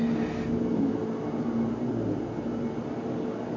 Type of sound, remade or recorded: recorded